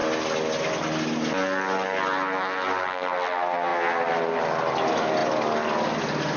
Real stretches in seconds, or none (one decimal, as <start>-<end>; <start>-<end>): 0.0-6.4